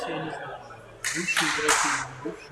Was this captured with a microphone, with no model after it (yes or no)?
yes